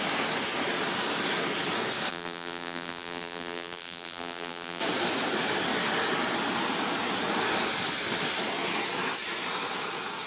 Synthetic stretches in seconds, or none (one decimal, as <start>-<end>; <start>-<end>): 2.1-4.8